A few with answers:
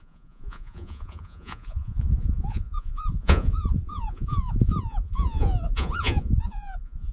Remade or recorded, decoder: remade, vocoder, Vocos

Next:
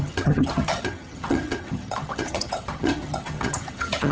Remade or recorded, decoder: remade, vocoder, HiFi-GAN